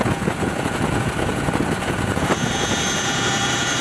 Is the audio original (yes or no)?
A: no